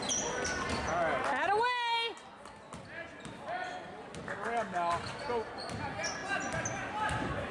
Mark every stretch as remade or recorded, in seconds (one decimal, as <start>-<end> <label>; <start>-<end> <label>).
0.0-7.5 recorded